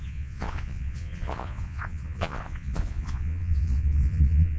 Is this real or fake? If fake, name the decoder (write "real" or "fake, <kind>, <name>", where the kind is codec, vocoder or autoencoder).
fake, vocoder, Vocos